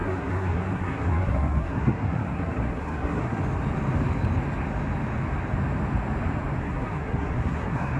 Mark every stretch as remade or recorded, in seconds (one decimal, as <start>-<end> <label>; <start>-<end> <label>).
0.0-3.4 remade; 3.4-6.6 recorded; 6.6-8.0 remade